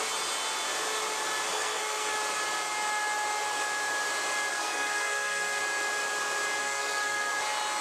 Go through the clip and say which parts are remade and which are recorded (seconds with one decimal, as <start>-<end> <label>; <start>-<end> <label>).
0.0-1.5 recorded; 1.5-2.1 remade; 2.1-4.5 recorded; 4.5-5.6 remade; 5.6-6.6 recorded; 6.6-7.3 remade; 7.3-7.8 recorded